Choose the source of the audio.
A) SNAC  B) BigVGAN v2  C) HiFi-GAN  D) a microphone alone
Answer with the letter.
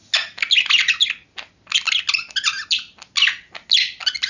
D